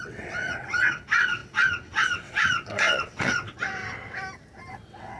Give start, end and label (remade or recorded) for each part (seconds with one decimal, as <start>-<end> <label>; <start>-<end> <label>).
0.0-3.8 remade; 3.8-4.7 recorded; 4.7-5.2 remade